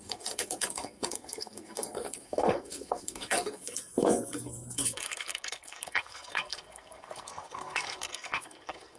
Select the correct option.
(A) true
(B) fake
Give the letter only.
B